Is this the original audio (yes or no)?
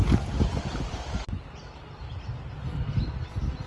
yes